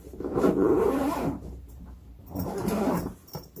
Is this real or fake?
fake